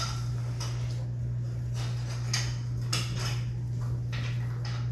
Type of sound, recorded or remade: recorded